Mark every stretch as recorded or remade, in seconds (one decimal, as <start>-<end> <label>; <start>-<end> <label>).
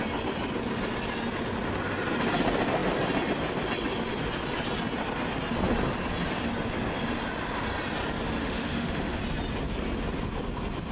0.0-8.4 recorded; 8.4-9.2 remade; 9.2-10.9 recorded